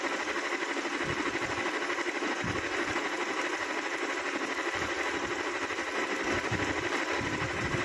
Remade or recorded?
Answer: recorded